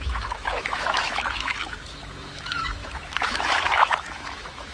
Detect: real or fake fake